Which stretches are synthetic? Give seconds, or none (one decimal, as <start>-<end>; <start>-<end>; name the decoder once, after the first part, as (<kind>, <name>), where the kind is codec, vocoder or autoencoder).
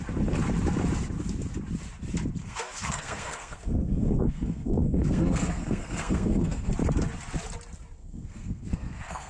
2.4-6.7 (codec, SNAC); 8.0-9.3